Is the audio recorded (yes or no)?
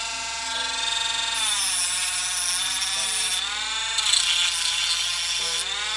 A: yes